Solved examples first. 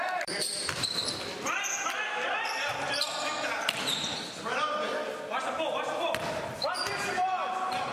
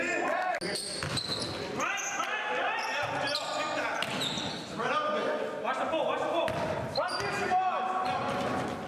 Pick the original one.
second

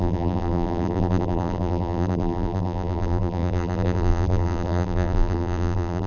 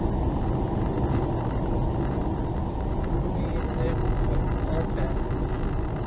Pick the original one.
second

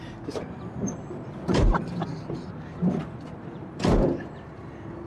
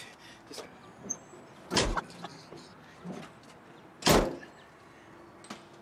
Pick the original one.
second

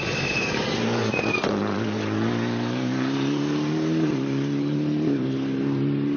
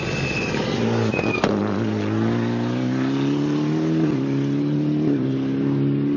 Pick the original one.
second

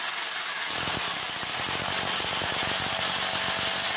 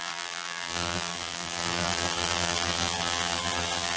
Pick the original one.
first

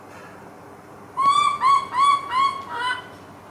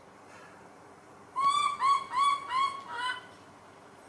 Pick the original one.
first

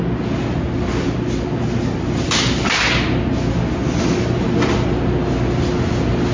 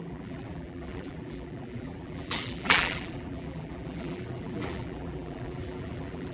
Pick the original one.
first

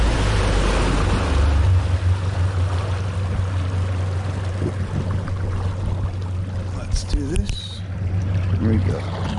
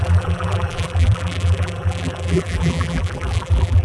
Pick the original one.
first